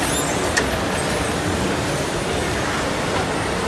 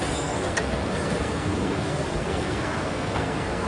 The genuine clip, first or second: first